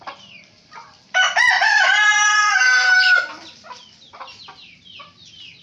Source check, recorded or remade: remade